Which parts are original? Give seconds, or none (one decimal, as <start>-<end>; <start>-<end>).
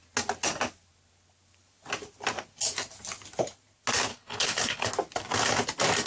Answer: 0.0-4.1; 4.9-6.1